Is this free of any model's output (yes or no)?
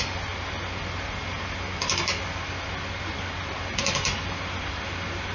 yes